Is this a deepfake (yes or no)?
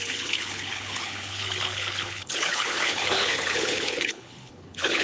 yes